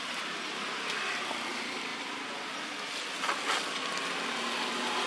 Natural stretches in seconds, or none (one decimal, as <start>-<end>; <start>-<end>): 0.0-5.1